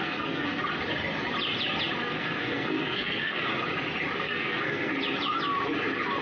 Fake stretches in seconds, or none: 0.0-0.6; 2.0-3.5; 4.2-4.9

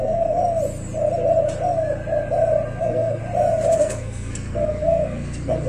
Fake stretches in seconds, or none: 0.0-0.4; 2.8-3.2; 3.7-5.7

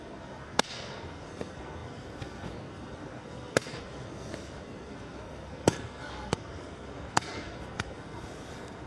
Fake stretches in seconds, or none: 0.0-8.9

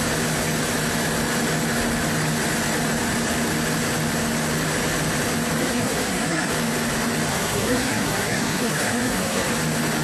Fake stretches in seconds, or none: 5.6-6.5; 7.3-9.5